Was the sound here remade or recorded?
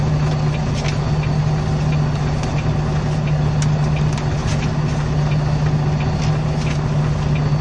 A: recorded